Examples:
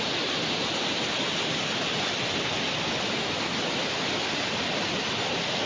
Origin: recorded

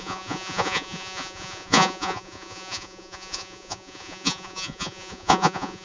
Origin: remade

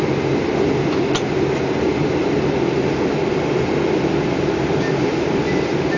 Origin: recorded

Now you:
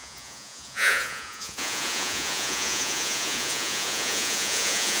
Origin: remade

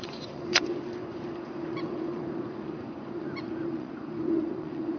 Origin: remade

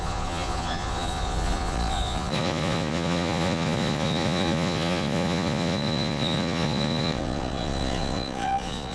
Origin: remade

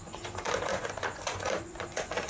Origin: remade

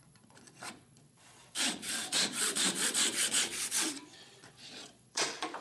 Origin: remade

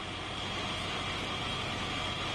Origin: recorded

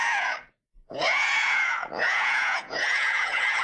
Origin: remade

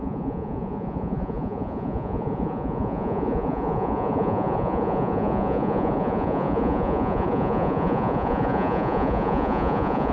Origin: remade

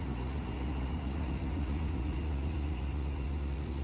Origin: remade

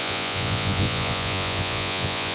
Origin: remade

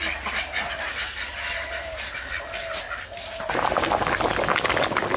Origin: recorded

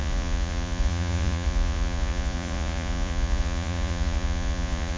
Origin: remade